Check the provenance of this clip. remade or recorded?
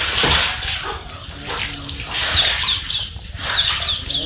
recorded